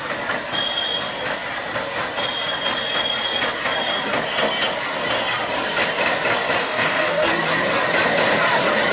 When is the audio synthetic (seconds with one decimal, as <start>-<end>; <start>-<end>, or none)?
6.6-7.3